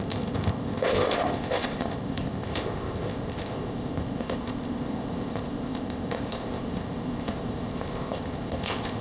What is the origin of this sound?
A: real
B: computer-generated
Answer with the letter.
B